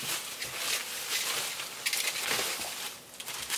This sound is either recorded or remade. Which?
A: recorded